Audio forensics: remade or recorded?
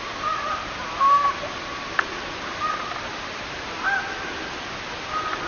recorded